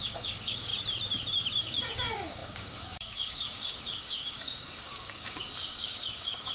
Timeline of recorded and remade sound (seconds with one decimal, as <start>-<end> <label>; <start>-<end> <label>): 0.0-0.7 remade; 0.7-1.6 recorded; 1.6-6.5 remade